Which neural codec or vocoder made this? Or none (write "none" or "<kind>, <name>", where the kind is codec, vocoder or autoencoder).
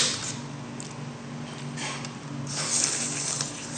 none